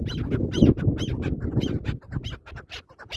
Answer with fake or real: real